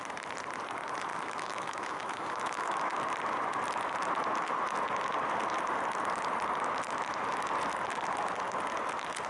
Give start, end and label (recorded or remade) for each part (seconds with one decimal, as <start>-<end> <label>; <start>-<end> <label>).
0.0-1.1 recorded; 1.1-2.9 remade; 2.9-9.3 recorded